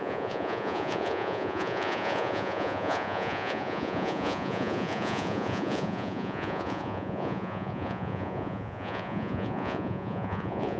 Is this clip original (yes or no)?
no